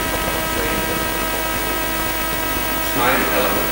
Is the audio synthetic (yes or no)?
no